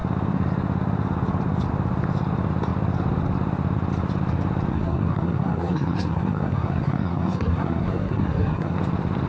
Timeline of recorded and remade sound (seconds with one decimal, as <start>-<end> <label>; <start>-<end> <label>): 0.0-4.7 recorded; 4.7-8.8 remade; 8.8-9.3 recorded

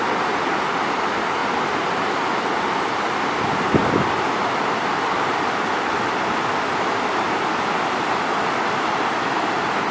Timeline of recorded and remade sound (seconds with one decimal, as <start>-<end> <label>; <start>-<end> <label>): 0.0-9.9 recorded

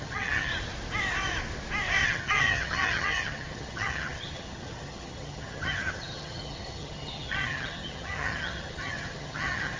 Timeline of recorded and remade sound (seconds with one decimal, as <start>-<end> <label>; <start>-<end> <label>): 0.0-0.5 remade; 0.5-2.0 recorded; 2.0-9.8 remade

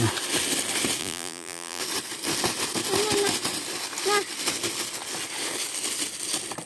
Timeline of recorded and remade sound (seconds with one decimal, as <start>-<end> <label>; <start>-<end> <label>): 0.0-1.0 recorded; 1.0-1.8 remade; 1.8-6.7 recorded

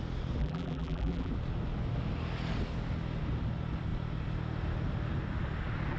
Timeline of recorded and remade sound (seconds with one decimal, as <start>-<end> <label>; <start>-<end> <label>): 0.0-0.4 recorded; 0.4-1.3 remade; 1.3-6.0 recorded

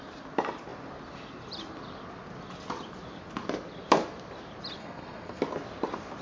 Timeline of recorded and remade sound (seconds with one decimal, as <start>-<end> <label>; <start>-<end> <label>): 0.0-4.8 recorded; 4.8-5.4 remade; 5.4-6.2 recorded

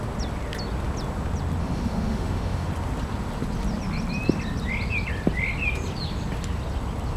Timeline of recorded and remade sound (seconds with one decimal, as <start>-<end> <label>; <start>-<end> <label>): 0.0-1.6 recorded; 1.6-2.7 remade; 2.7-7.2 recorded